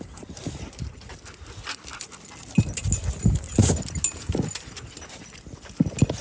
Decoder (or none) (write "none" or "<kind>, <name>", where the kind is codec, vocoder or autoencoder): none